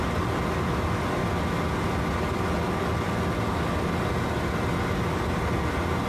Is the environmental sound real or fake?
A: real